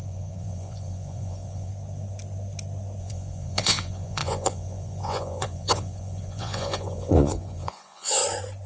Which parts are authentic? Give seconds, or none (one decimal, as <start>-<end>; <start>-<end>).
1.7-3.0; 8.2-8.7